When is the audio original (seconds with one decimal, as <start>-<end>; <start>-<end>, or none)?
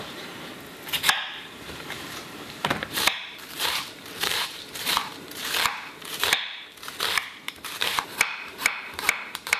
0.5-1.2; 6.4-7.3